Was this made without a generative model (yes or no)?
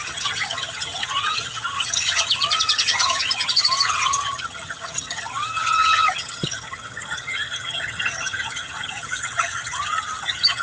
no